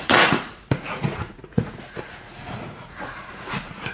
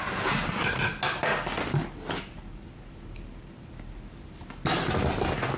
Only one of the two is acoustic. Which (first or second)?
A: second